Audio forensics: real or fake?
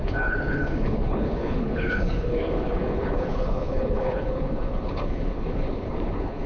fake